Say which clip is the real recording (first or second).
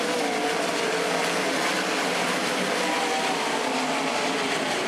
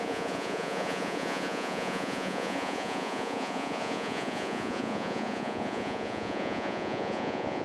first